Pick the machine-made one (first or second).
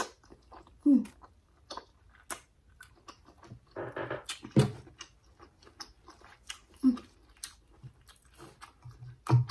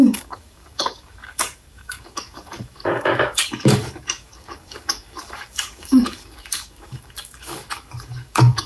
second